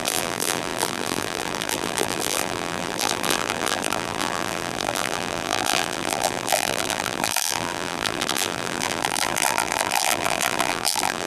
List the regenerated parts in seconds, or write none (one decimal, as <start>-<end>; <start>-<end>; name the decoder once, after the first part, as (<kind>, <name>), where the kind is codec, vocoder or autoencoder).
0.0-11.3 (vocoder, BigVGAN v2)